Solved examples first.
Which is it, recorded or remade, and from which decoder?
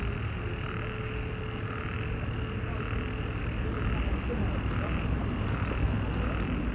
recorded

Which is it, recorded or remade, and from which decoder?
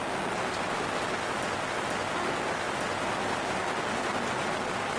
recorded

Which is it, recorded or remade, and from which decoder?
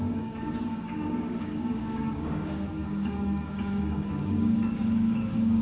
remade, codec, DAC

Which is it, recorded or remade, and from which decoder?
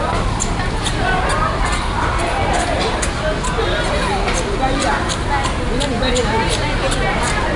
recorded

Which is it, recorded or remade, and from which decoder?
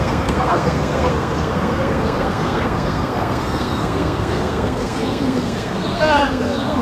remade, codec, SNAC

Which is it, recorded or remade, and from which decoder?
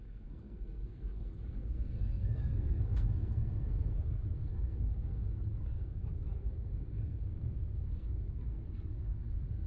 remade, codec, SNAC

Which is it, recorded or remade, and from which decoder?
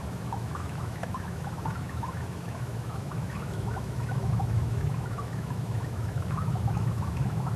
remade, autoencoder, DAC-VAE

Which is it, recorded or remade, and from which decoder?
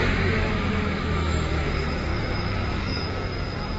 remade, autoencoder, DAC-VAE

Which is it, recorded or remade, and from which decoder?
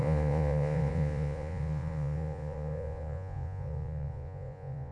remade, vocoder, Vocos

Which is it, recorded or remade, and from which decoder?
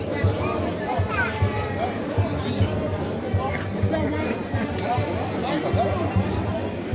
remade, vocoder, BigVGAN v2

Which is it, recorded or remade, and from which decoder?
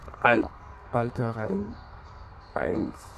remade, codec, SNAC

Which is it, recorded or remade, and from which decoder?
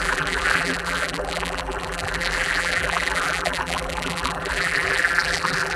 remade, vocoder, BigVGAN v2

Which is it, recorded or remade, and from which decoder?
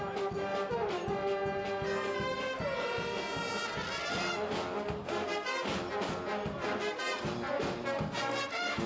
recorded